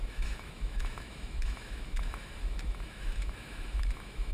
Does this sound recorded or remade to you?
remade